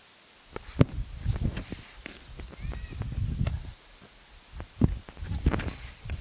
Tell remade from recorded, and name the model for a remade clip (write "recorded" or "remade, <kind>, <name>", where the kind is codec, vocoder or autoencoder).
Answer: recorded